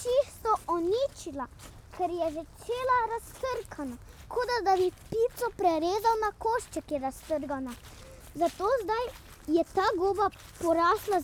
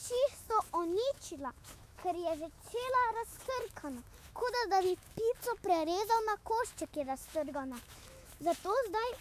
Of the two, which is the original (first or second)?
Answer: first